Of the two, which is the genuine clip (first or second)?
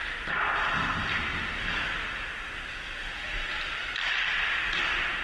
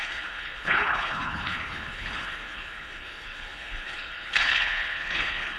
first